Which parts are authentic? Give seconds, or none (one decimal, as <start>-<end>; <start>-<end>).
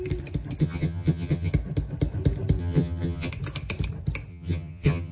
0.0-0.6; 1.5-2.6; 3.3-4.3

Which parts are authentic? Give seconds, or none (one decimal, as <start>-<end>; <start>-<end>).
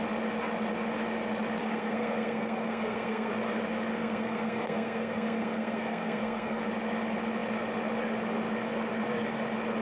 0.0-1.6; 3.3-3.9; 6.6-9.8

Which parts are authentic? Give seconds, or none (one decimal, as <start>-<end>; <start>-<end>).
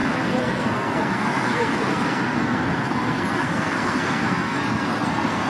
none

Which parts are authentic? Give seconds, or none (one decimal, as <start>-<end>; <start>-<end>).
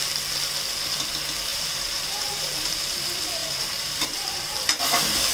0.0-1.5; 3.0-3.4; 4.8-5.3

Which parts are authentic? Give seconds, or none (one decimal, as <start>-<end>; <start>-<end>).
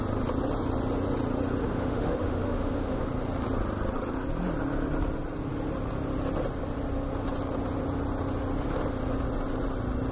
0.0-1.6; 3.0-10.1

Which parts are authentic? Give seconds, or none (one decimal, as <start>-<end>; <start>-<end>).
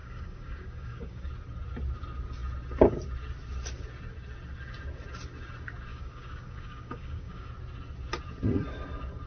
1.3-5.9; 7.5-9.3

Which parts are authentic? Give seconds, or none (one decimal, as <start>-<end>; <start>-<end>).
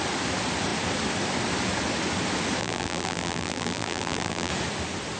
0.0-2.6; 4.5-5.2